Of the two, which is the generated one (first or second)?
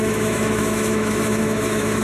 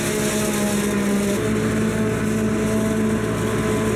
first